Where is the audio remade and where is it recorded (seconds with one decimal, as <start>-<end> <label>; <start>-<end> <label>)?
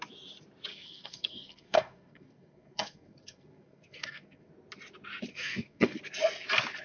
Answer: 0.0-0.7 recorded; 0.7-4.5 remade; 4.5-5.3 recorded; 5.3-6.0 remade; 6.0-6.8 recorded